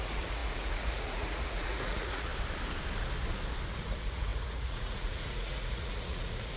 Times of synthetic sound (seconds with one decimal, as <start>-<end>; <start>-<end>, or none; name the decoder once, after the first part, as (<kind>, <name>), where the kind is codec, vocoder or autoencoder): 0.0-2.3 (vocoder, Vocos); 3.7-6.6